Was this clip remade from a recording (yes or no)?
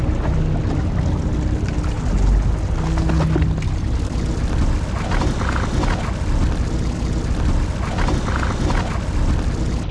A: no